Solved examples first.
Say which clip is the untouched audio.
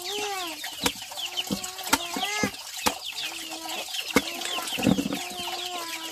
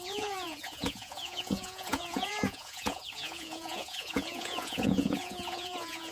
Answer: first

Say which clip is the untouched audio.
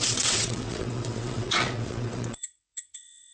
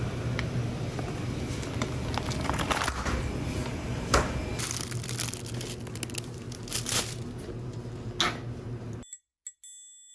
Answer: second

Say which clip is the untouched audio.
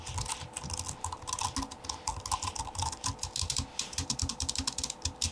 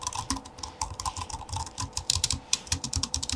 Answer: first